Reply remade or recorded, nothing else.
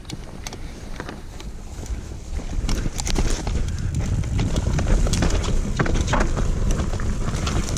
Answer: remade